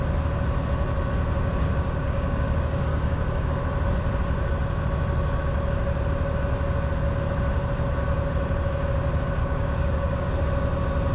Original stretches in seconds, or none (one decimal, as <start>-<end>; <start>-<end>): 0.0-1.6; 3.6-9.4; 10.3-11.1